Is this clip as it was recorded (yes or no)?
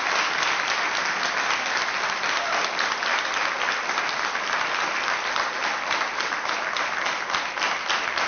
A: yes